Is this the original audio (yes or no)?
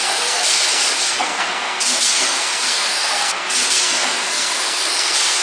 no